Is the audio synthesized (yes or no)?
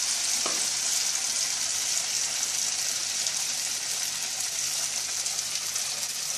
no